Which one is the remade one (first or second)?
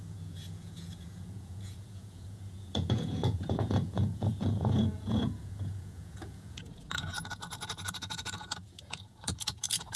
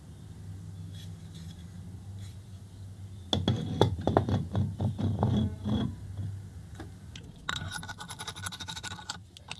first